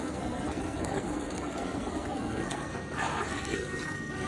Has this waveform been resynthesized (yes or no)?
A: yes